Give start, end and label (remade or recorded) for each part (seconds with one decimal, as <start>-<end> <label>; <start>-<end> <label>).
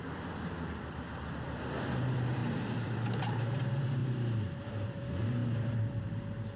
0.0-4.0 remade; 4.0-4.6 recorded; 4.6-5.4 remade; 5.4-6.0 recorded; 6.0-6.6 remade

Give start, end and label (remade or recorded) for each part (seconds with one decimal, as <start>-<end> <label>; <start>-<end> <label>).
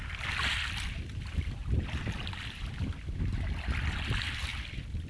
0.0-0.5 recorded; 0.5-1.1 remade; 1.1-1.6 recorded; 1.6-3.7 remade; 3.7-4.5 recorded; 4.5-5.1 remade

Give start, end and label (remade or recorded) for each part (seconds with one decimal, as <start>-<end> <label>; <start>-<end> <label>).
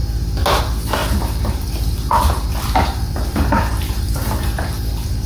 0.0-0.6 recorded; 0.6-5.3 remade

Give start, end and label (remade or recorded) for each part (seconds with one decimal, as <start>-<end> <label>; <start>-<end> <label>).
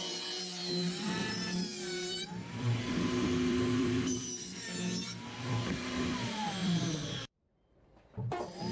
0.0-8.7 remade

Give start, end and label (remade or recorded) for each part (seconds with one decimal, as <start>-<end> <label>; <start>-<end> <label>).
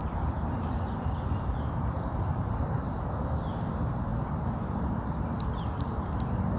0.0-6.6 remade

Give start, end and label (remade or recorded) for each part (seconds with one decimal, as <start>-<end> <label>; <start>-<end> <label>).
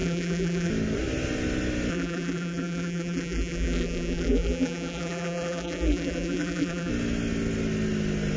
0.0-0.7 remade; 0.7-1.9 recorded; 1.9-6.9 remade; 6.9-8.4 recorded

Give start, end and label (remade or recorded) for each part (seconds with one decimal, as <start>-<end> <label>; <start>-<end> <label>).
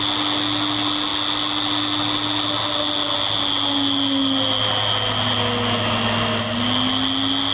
0.0-7.5 recorded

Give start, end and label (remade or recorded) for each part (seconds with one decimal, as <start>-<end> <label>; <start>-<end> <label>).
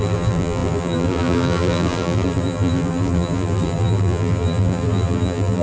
0.0-5.6 remade